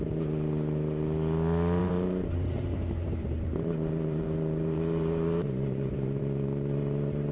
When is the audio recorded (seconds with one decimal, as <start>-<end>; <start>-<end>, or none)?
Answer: 0.0-1.8; 6.2-7.3